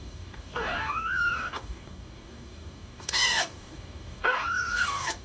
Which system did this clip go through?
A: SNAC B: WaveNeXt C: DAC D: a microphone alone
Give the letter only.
C